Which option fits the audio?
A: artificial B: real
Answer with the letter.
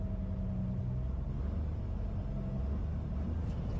B